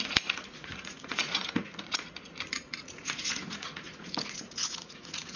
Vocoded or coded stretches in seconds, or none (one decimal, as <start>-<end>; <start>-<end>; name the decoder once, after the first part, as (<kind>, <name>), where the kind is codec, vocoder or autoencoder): 0.0-5.4 (vocoder, Vocos)